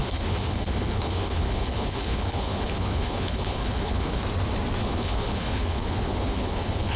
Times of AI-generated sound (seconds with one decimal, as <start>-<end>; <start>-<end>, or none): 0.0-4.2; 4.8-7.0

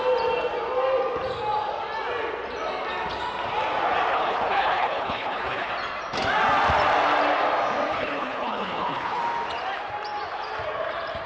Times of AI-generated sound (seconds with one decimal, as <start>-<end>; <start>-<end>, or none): 4.1-5.7; 7.9-9.2

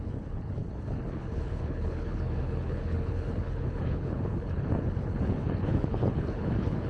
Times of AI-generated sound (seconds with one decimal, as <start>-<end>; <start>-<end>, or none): 0.0-6.9

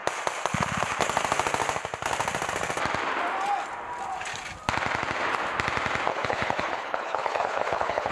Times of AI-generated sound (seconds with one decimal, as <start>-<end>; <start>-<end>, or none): 6.1-8.1